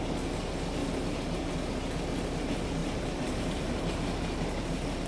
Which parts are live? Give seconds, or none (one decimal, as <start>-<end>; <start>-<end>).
0.0-0.8; 1.5-2.8; 3.8-5.1